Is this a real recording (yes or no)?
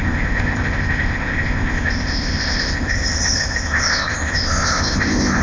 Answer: no